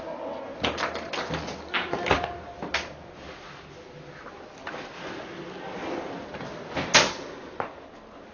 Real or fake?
real